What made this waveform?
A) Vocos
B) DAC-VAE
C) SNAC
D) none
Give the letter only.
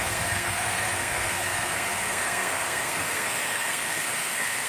C